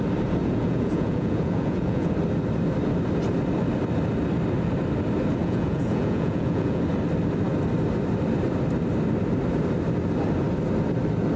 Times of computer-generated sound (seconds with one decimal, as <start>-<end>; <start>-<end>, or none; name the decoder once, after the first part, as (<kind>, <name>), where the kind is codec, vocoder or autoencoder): 0.4-2.1 (vocoder, Vocos); 5.4-6.8